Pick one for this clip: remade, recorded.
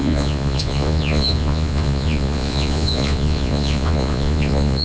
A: remade